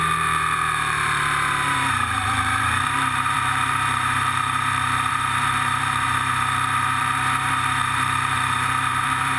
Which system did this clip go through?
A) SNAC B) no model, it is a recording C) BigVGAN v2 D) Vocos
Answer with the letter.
C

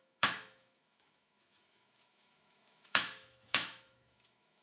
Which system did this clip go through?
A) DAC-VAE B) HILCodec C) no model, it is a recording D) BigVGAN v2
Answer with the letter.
A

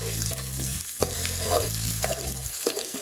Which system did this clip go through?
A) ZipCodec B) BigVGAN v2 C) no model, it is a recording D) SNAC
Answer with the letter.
D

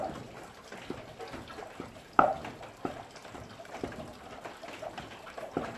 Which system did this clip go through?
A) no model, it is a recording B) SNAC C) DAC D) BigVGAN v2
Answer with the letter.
A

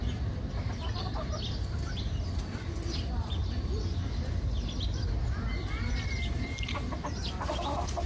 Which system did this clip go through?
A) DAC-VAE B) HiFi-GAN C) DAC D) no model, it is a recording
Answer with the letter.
D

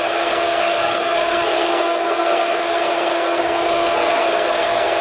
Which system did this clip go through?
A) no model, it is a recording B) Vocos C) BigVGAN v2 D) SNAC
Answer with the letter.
D